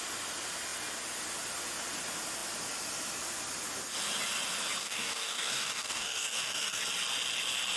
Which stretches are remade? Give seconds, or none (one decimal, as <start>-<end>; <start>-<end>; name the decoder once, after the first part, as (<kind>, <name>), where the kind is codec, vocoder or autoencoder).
4.8-6.8 (codec, DAC)